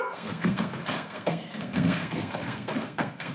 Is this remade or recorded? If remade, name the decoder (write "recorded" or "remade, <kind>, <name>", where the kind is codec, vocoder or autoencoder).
remade, codec, SNAC